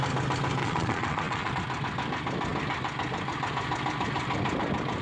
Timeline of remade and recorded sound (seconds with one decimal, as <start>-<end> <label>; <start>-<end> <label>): 0.0-0.6 recorded; 0.6-1.5 remade; 1.5-5.0 recorded